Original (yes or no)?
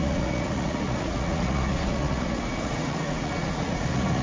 no